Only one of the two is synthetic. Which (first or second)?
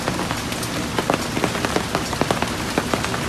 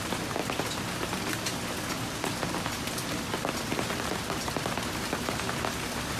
second